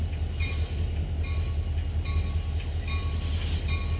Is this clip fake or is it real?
real